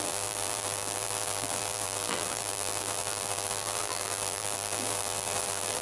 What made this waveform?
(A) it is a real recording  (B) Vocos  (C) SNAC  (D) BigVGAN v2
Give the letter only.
D